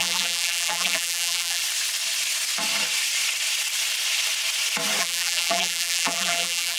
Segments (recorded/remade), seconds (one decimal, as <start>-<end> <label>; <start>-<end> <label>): 0.0-1.6 remade; 1.6-5.0 recorded; 5.0-6.8 remade